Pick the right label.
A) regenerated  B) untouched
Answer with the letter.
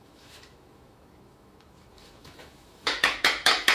A